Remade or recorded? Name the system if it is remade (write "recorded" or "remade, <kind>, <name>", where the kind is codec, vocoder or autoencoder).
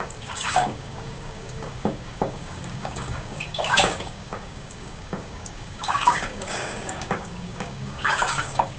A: remade, codec, DAC